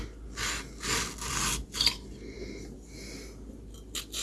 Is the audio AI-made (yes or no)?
no